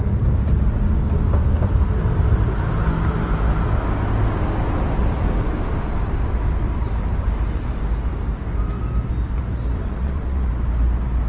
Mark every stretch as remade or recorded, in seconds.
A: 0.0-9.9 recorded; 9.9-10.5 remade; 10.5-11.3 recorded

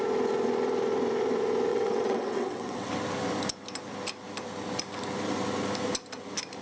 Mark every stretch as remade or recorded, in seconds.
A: 0.0-1.7 recorded; 1.7-2.9 remade; 2.9-6.6 recorded

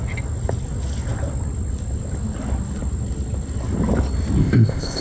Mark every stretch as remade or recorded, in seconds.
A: 0.0-4.4 recorded; 4.4-5.0 remade

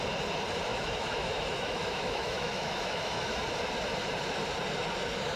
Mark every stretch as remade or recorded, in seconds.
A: 0.0-0.7 recorded; 0.7-3.3 remade; 3.3-5.4 recorded

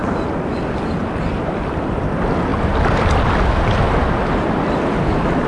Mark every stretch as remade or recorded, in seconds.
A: 0.0-5.5 recorded